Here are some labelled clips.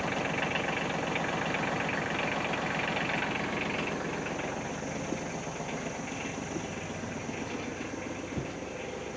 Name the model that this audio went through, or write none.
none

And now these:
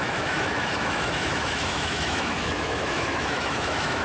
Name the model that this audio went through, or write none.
autoencoder, DAC-VAE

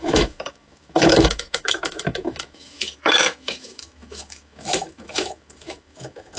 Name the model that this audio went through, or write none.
autoencoder, DAC-VAE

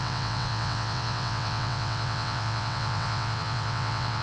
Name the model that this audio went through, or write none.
vocoder, WaveNeXt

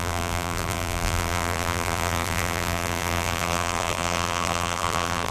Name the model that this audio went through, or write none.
vocoder, BigVGAN v2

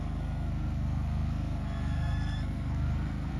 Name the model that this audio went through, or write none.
codec, SNAC